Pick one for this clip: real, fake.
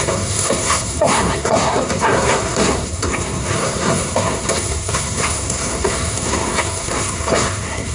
fake